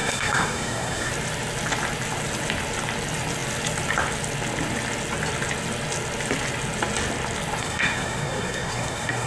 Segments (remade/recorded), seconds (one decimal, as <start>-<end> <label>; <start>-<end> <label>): 0.0-1.1 remade; 1.1-7.6 recorded; 7.6-9.3 remade